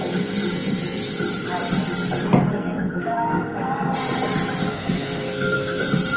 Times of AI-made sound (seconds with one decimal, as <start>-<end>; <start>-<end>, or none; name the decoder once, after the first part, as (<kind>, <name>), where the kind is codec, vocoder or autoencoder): 2.5-3.7 (codec, SNAC); 4.7-5.8